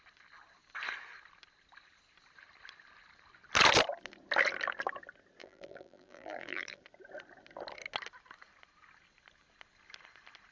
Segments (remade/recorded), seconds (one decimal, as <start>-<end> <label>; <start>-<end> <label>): 0.0-5.4 recorded; 5.4-6.8 remade; 6.8-10.5 recorded